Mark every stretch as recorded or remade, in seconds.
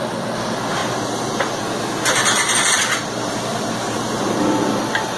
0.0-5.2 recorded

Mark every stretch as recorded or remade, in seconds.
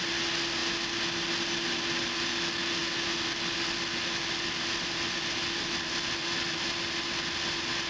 0.0-7.9 recorded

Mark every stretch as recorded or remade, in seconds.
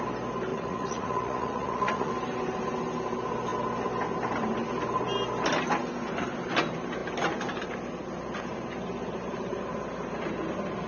0.0-0.5 recorded; 0.5-2.1 remade; 2.1-10.9 recorded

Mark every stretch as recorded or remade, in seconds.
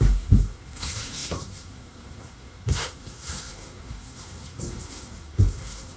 0.0-6.0 remade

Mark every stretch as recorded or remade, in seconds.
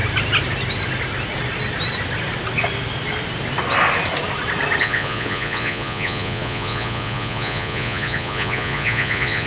0.0-4.8 recorded; 4.8-9.5 remade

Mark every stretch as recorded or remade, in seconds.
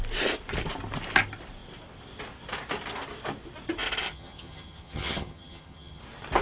0.0-4.0 recorded; 4.0-6.0 remade; 6.0-6.4 recorded